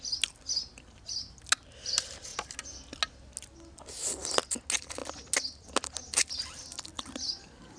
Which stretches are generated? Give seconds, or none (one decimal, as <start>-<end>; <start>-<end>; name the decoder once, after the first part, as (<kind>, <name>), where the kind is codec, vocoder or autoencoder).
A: none